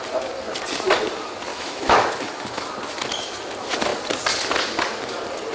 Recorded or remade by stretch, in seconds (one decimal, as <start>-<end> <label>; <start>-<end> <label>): 0.0-1.5 recorded; 1.5-2.7 remade; 2.7-5.5 recorded